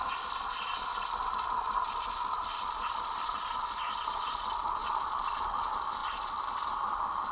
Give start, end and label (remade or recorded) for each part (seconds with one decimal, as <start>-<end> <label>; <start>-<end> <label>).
0.0-7.3 recorded

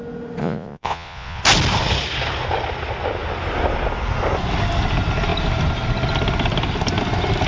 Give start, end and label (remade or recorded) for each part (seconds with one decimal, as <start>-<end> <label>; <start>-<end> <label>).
0.0-0.4 recorded; 0.4-1.4 remade; 1.4-7.5 recorded

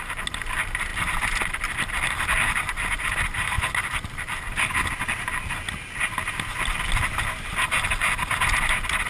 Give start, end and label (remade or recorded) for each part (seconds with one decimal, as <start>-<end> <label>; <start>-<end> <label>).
0.0-9.1 recorded

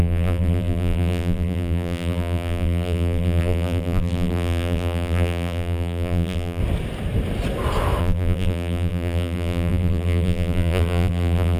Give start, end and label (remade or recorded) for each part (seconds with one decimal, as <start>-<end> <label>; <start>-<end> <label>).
0.0-6.6 remade; 6.6-8.0 recorded; 8.0-11.6 remade

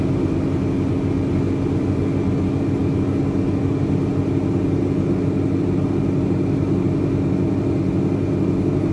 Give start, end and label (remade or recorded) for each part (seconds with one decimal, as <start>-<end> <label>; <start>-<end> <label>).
0.0-8.9 recorded

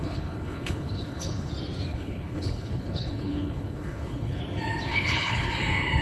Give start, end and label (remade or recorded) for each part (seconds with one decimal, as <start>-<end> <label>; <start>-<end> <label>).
0.0-1.5 remade; 1.5-1.9 recorded; 1.9-4.4 remade; 4.4-4.9 recorded; 4.9-5.5 remade; 5.5-6.0 recorded

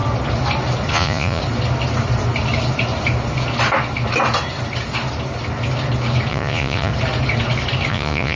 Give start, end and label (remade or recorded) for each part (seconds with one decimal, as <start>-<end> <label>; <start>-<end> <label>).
0.0-0.9 recorded; 0.9-1.4 remade; 1.4-6.3 recorded; 6.3-6.9 remade; 6.9-7.9 recorded; 7.9-8.4 remade

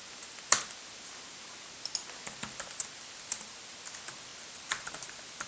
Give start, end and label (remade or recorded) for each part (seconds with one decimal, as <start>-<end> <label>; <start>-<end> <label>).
0.0-4.3 recorded; 4.3-4.9 remade; 4.9-5.5 recorded